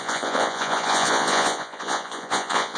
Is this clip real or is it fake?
fake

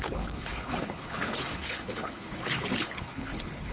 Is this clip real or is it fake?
fake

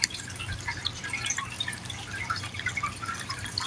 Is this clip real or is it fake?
fake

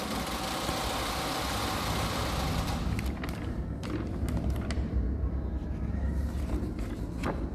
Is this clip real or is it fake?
real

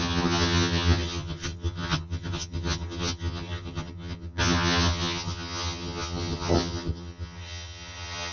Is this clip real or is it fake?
fake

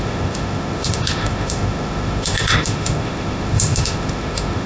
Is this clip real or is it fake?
fake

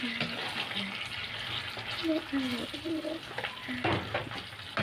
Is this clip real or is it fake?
real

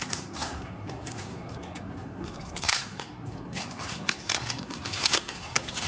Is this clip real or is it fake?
fake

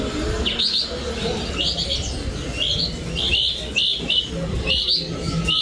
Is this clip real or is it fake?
real